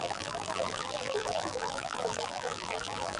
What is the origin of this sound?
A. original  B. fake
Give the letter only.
B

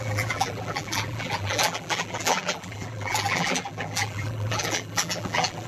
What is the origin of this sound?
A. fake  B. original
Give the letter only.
A